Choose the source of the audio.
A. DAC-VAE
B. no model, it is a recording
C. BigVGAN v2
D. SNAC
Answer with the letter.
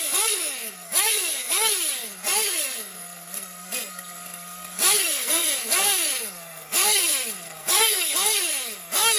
D